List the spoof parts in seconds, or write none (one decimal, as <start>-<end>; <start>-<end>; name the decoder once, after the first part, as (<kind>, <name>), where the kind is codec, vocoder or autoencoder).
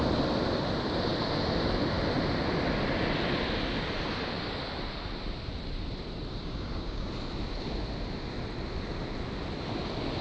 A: 6.4-7.1 (codec, DAC)